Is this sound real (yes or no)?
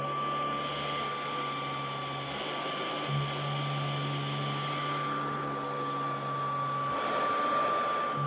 yes